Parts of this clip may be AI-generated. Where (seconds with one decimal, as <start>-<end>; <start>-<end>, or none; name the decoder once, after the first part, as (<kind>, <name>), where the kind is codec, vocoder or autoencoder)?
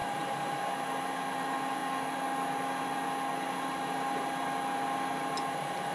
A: none